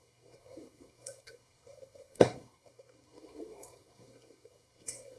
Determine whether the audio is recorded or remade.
remade